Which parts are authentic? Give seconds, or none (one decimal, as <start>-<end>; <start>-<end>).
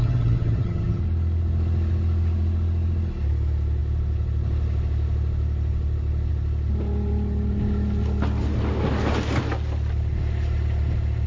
1.0-11.3